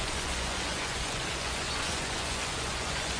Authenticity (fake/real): fake